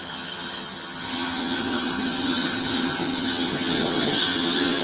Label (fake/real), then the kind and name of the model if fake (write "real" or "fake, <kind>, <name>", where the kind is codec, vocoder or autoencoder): fake, vocoder, HiFi-GAN